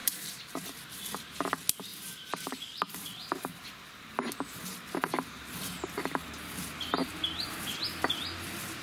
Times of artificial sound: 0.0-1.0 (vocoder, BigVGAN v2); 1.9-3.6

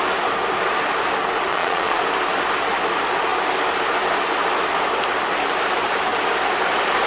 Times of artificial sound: 1.5-2.0 (vocoder, Vocos)